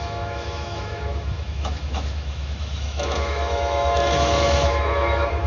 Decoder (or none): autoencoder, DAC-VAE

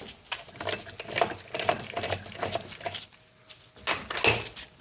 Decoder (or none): none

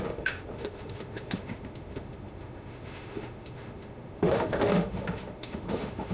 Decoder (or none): autoencoder, DAC-VAE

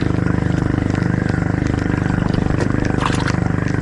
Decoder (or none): none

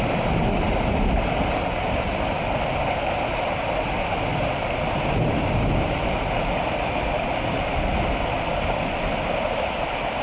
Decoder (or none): none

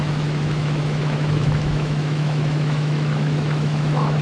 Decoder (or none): autoencoder, DAC-VAE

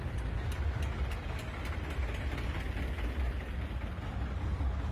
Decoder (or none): none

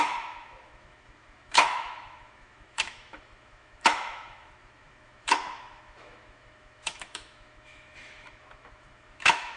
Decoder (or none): autoencoder, DAC-VAE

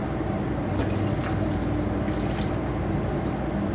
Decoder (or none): none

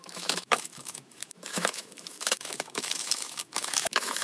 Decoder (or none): autoencoder, DAC-VAE